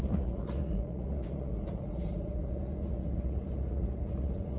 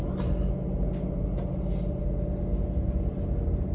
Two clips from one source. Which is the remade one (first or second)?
first